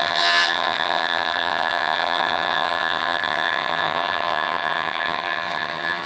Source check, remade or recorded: remade